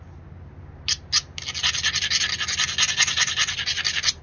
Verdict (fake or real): real